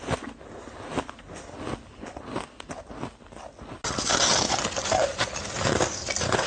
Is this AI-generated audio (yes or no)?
no